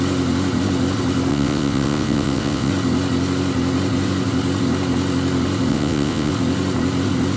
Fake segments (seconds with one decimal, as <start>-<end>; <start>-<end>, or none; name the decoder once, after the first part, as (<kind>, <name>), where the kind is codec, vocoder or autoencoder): 1.3-2.7 (vocoder, WaveNeXt); 5.7-6.3